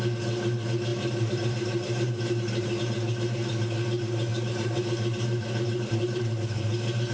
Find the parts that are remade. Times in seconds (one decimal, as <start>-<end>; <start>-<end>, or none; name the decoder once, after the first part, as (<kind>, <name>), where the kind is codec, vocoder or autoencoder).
0.9-2.8 (vocoder, BigVGAN v2); 4.3-6.6